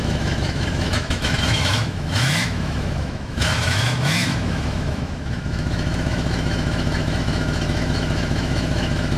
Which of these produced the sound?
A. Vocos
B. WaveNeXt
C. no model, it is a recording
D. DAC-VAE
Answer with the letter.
D